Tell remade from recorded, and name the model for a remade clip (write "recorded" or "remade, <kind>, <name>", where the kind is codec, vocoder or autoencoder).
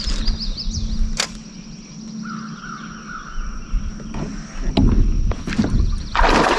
recorded